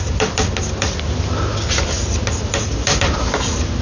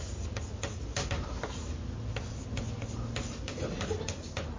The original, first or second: second